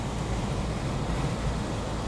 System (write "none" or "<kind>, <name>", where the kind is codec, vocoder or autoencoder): none